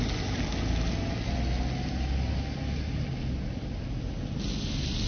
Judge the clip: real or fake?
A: real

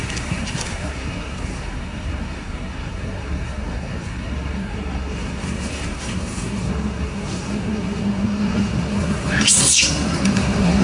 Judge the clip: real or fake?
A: fake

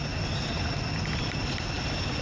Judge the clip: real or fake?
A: real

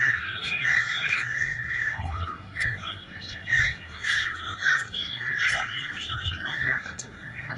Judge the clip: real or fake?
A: fake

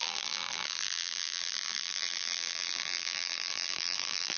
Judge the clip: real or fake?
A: fake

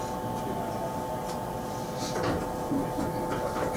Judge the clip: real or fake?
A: real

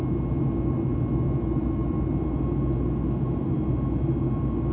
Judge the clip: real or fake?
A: real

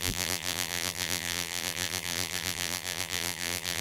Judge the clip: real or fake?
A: fake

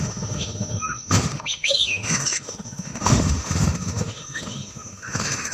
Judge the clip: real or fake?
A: fake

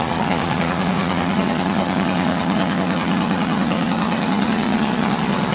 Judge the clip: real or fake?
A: fake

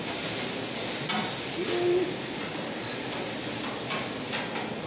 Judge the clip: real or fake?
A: real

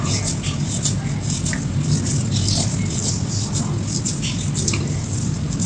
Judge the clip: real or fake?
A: real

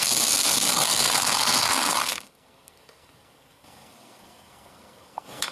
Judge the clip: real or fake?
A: fake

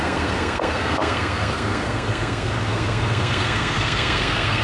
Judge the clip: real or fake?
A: fake